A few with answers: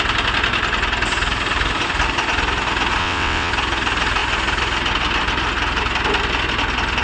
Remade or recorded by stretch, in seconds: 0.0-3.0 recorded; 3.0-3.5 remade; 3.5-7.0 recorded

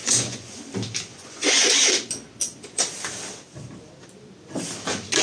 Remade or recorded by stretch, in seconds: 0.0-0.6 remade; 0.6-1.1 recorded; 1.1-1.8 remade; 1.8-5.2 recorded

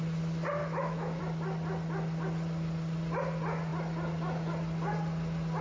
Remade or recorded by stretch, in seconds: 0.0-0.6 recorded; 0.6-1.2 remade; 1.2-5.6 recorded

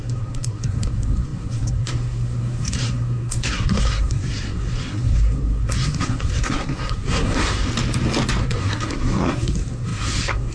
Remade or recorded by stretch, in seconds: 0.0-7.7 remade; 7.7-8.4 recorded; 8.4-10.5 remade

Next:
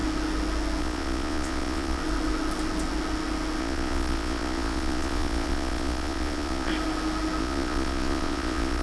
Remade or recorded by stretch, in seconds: 0.0-0.8 recorded; 0.8-2.0 remade; 2.0-3.6 recorded; 3.6-6.7 remade; 6.7-7.4 recorded; 7.4-8.8 remade

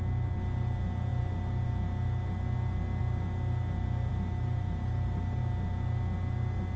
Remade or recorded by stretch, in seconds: 0.0-4.1 recorded; 4.1-5.4 remade; 5.4-6.8 recorded

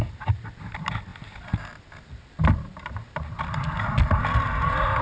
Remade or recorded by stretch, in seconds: 0.0-5.0 recorded